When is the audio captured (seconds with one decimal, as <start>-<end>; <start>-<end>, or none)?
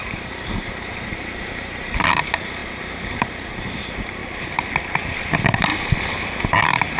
4.2-4.8; 5.7-6.6